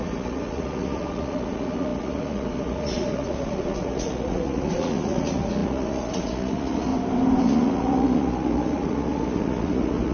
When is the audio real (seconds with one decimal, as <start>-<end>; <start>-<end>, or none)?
6.9-7.4